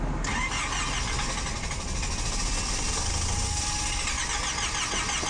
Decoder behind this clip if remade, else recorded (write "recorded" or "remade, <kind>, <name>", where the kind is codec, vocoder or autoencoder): recorded